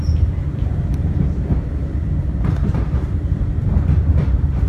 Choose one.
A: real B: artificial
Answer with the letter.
B